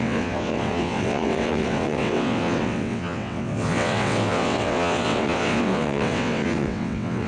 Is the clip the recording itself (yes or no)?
no